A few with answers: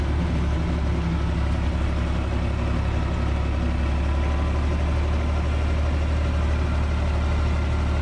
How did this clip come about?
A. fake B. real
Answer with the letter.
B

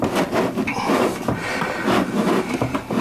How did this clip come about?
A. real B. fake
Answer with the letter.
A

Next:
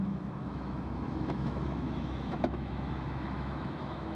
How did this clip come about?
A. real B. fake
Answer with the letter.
B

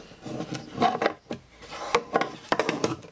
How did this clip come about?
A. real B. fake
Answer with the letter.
A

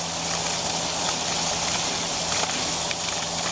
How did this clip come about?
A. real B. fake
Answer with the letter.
A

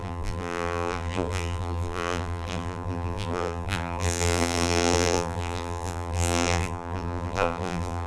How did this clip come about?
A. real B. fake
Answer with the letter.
B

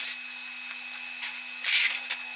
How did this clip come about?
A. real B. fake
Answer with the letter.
A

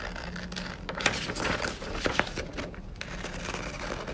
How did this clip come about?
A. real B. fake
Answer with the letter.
A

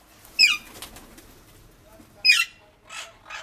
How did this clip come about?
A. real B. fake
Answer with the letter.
A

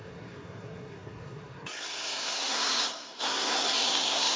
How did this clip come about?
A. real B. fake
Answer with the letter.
B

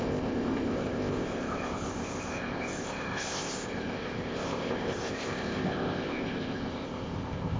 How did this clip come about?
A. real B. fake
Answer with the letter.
B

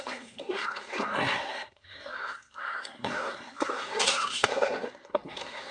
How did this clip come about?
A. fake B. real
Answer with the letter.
A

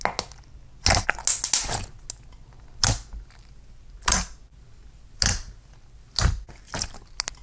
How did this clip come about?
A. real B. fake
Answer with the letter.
A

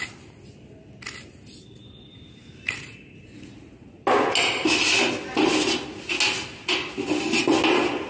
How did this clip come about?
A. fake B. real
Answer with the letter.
B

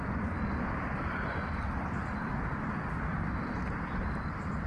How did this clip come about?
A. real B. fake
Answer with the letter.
A